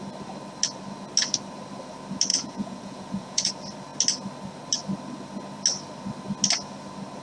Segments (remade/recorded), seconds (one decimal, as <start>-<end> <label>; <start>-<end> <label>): 0.0-2.3 recorded; 2.3-3.5 remade; 3.5-7.2 recorded